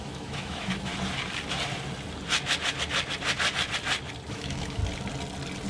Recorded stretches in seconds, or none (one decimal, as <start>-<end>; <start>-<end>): 0.9-4.3; 4.8-5.7